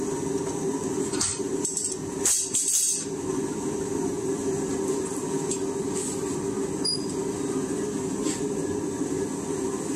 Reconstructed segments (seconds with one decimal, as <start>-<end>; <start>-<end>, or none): none